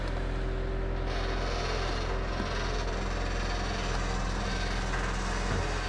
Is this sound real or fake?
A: real